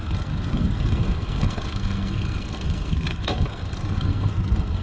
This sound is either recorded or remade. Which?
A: remade